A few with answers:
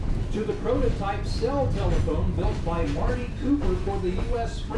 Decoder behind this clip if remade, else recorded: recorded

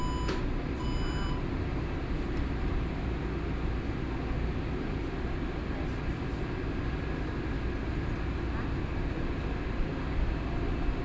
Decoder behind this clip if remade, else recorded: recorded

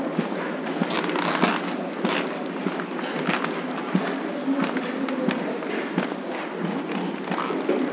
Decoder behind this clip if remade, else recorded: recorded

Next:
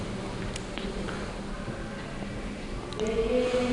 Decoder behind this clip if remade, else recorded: recorded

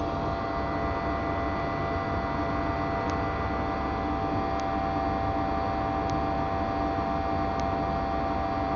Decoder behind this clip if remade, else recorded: recorded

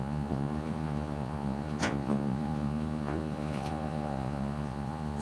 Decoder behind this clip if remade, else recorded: remade, vocoder, Vocos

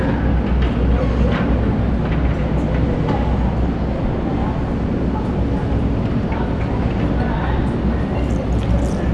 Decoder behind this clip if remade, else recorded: recorded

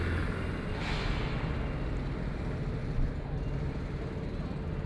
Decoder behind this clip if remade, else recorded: recorded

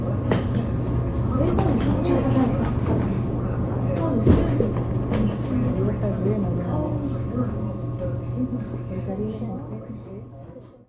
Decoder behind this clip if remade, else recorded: recorded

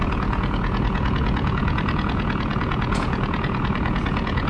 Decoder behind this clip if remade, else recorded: remade, vocoder, Vocos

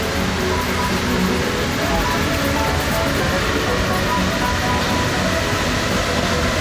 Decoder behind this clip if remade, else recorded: recorded